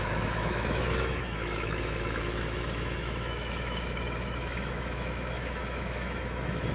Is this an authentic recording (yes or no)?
no